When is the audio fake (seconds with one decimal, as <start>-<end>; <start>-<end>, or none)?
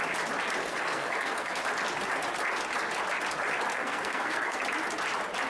0.6-1.6; 3.7-4.6